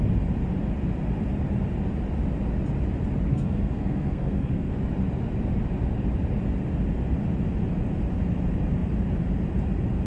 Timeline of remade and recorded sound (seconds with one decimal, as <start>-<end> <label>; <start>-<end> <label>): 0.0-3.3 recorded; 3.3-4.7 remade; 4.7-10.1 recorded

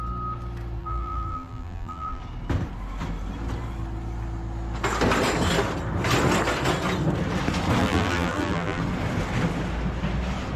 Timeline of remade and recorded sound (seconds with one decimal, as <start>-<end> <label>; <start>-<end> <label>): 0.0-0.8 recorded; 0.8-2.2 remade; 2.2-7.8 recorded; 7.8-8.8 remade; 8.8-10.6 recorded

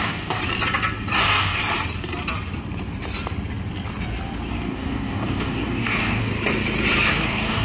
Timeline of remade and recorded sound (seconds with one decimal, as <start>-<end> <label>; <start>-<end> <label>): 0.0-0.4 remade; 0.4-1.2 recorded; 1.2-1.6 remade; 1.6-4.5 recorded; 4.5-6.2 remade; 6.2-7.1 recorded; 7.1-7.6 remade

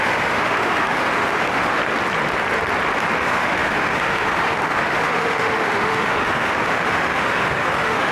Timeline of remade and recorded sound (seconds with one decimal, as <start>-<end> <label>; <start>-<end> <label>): 0.0-1.8 remade; 1.8-3.2 recorded; 3.2-8.1 remade

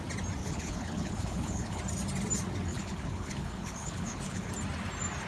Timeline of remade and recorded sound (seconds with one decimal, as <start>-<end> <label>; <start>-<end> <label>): 0.0-0.4 recorded; 0.4-1.8 remade; 1.8-2.7 recorded; 2.7-4.5 remade; 4.5-5.3 recorded

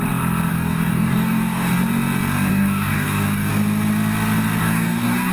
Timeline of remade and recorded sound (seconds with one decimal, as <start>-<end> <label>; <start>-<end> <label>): 0.0-0.5 recorded; 0.5-1.7 remade; 1.7-2.5 recorded; 2.5-3.5 remade; 3.5-4.6 recorded; 4.6-5.3 remade

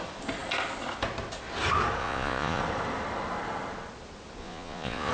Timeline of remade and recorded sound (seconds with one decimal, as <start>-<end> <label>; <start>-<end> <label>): 0.0-2.0 recorded; 2.0-2.6 remade; 2.6-4.4 recorded; 4.4-5.1 remade

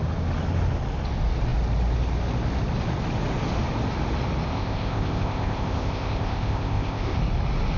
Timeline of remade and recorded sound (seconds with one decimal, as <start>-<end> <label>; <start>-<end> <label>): 0.0-4.5 recorded; 4.5-7.2 remade; 7.2-7.8 recorded